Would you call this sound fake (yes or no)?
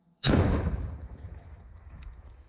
yes